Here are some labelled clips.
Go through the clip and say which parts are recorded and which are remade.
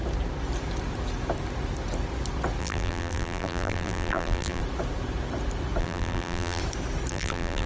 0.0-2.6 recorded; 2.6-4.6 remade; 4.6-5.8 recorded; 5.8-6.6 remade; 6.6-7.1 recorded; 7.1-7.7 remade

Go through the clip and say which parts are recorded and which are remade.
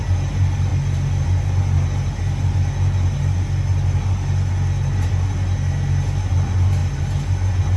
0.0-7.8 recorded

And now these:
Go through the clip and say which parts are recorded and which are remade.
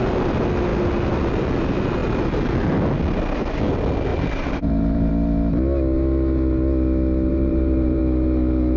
0.0-4.1 recorded; 4.1-5.1 remade; 5.1-7.3 recorded; 7.3-8.0 remade; 8.0-8.8 recorded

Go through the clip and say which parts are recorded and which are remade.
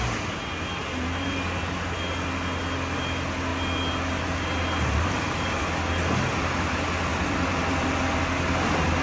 0.0-7.1 recorded; 7.1-8.2 remade; 8.2-9.0 recorded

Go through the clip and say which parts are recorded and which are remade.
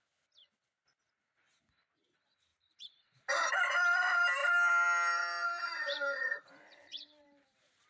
0.0-2.5 recorded; 2.5-3.5 remade; 3.5-4.4 recorded; 4.4-7.9 remade